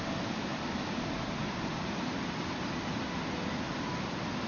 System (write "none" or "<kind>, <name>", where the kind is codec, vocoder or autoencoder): none